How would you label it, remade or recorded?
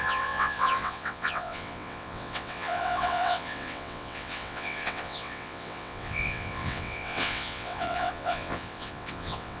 remade